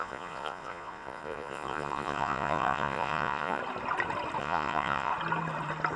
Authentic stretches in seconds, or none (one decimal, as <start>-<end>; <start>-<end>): 3.6-4.4; 5.1-6.0